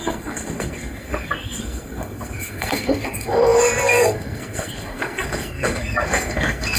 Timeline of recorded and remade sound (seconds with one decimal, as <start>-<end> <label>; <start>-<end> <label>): 0.0-6.8 remade